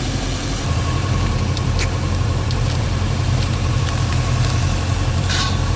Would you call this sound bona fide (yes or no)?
no